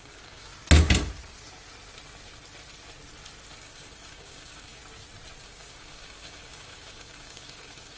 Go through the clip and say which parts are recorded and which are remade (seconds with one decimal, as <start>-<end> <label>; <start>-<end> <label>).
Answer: 0.0-0.5 remade; 0.5-3.6 recorded; 3.6-4.8 remade; 4.8-5.4 recorded; 5.4-8.0 remade